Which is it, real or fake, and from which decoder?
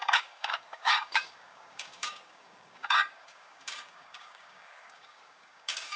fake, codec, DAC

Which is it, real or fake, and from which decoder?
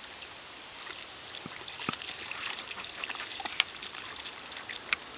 real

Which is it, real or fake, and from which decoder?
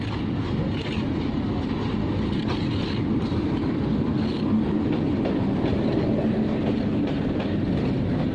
real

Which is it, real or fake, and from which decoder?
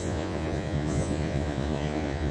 fake, vocoder, Vocos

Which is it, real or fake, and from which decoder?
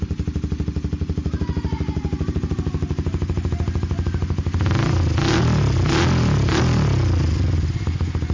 real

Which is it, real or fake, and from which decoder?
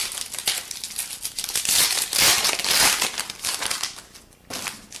real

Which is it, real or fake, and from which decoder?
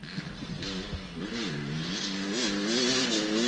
real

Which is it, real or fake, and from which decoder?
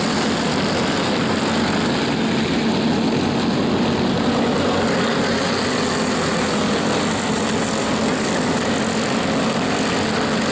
real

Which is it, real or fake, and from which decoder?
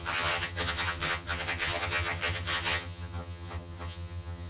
fake, vocoder, HiFi-GAN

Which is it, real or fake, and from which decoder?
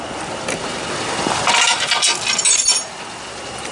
real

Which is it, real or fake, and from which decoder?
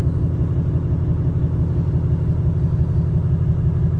real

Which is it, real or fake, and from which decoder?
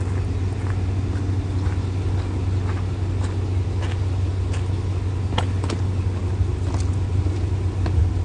real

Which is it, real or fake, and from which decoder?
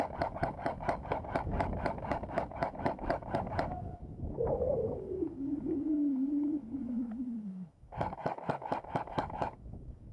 fake, codec, DAC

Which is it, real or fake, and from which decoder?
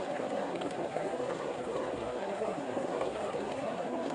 fake, codec, SNAC